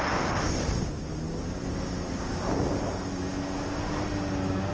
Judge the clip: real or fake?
real